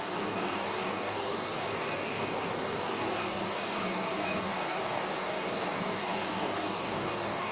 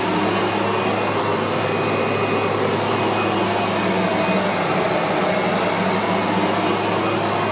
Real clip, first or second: second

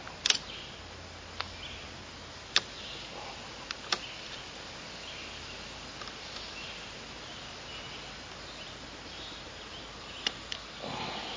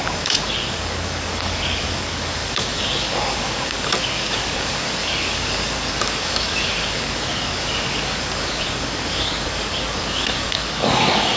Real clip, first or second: first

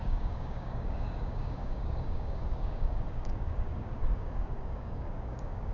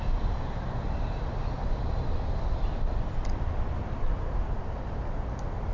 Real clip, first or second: second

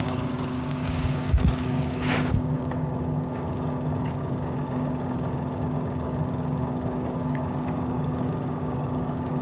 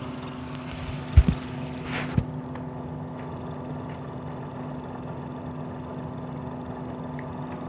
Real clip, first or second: second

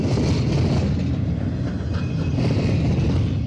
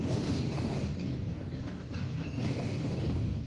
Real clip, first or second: first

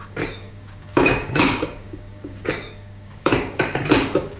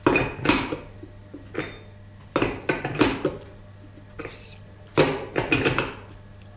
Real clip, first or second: second